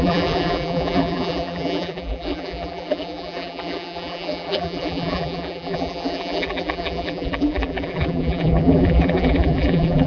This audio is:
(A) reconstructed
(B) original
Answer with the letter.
A